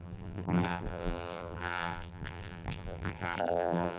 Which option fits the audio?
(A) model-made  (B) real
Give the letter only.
A